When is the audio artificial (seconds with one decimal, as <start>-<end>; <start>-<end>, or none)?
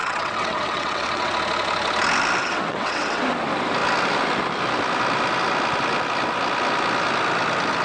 0.0-1.3; 2.4-3.2